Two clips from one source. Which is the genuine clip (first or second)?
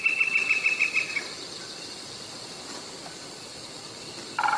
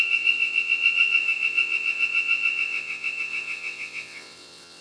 first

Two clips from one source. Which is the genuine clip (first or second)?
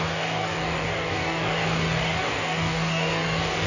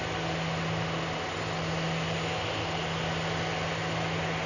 second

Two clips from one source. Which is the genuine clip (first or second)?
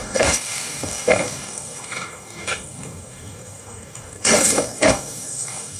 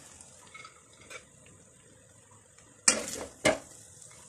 second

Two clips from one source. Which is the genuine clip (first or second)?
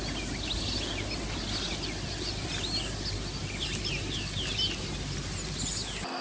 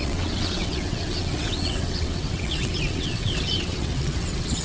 first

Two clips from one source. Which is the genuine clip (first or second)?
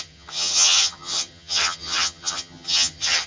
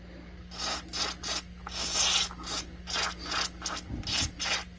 second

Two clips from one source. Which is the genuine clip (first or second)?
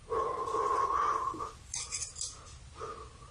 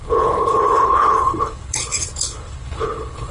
first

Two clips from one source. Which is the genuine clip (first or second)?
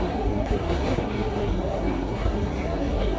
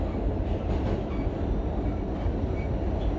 second